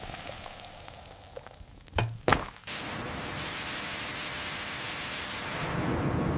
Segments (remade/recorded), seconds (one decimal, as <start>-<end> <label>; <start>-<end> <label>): 0.0-6.4 recorded